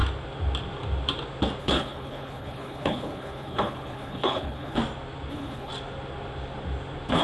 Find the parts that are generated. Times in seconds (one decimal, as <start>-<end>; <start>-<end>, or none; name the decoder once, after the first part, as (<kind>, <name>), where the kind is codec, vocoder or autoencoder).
1.6-4.8 (codec, HILCodec); 5.3-5.7